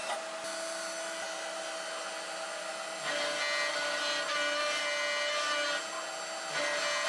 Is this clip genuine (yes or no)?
yes